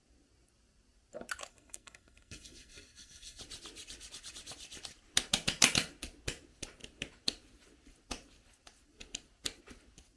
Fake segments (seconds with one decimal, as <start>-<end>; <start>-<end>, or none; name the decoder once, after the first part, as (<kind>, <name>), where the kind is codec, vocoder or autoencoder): 1.5-3.4 (codec, SNAC)